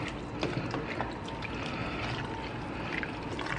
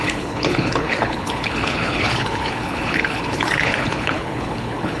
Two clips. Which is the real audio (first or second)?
first